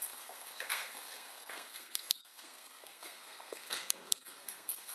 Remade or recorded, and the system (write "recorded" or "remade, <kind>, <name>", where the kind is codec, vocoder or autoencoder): remade, codec, SNAC